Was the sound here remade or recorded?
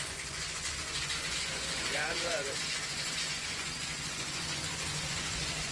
remade